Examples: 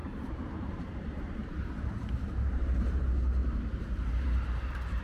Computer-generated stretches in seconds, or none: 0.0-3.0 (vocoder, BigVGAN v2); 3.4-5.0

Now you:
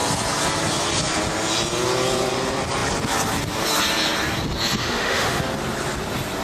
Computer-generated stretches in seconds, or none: 4.8-5.4 (autoencoder, DAC-VAE)

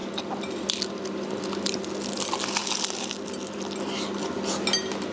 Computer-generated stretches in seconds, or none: none

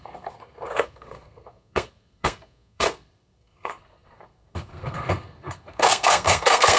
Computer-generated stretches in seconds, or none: 0.0-6.8 (codec, SNAC)

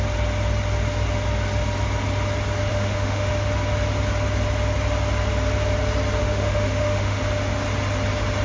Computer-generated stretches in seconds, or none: 2.7-3.3 (autoencoder, DAC-VAE); 6.2-7.2

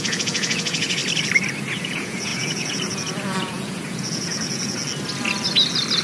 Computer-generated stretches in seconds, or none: 0.0-1.0 (vocoder, Vocos); 1.8-4.8

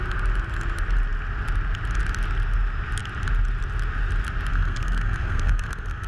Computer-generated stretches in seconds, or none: 4.5-6.1 (codec, SNAC)